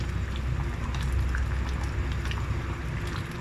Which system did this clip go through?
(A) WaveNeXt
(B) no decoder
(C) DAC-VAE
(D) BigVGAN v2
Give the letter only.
B